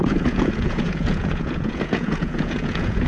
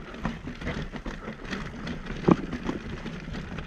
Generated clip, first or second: first